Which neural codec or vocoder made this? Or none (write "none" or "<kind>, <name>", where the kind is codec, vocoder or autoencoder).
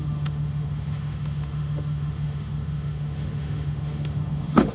autoencoder, DAC-VAE